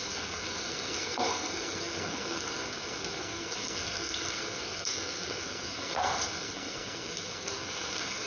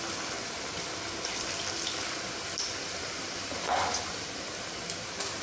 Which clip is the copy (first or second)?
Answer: first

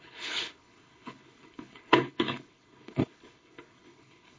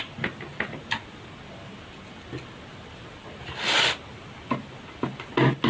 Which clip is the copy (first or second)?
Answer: first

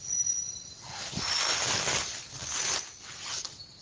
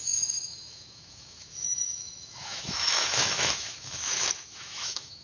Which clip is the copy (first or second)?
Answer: second